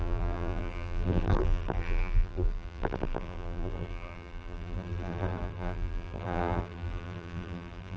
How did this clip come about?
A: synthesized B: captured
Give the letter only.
A